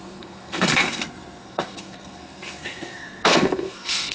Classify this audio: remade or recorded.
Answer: remade